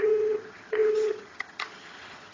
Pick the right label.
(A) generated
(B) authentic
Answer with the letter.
A